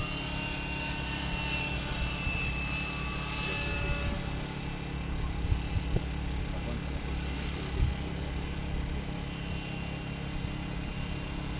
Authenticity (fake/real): real